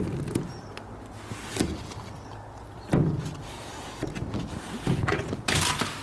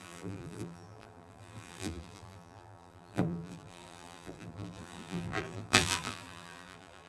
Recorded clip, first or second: first